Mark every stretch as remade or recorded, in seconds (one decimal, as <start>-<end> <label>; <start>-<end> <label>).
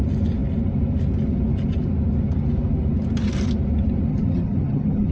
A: 0.0-4.1 recorded; 4.1-5.1 remade